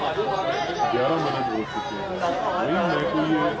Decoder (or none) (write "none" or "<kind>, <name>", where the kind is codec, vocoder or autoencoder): none